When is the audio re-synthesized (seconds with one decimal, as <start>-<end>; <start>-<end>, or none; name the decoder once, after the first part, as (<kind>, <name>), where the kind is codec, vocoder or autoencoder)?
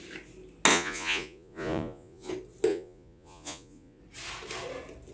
0.7-2.3 (vocoder, Vocos); 2.7-4.0